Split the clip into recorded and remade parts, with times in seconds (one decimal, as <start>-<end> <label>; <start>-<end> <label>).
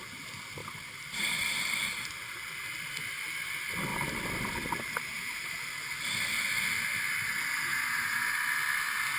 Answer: 0.0-0.6 recorded; 0.6-1.4 remade; 1.4-3.9 recorded; 3.9-5.5 remade; 5.5-7.7 recorded; 7.7-8.3 remade; 8.3-9.2 recorded